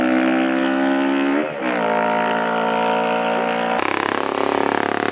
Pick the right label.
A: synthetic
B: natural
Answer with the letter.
B